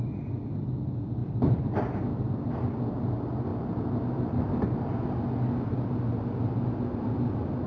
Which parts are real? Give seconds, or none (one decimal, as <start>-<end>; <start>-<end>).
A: 0.0-7.7